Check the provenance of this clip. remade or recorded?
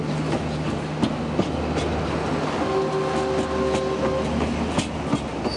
recorded